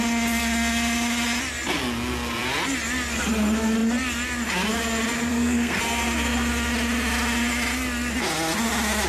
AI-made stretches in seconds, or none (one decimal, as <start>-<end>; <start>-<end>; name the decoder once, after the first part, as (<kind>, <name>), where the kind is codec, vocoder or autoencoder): 5.3-5.8 (codec, SNAC)